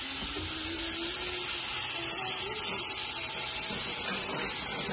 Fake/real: real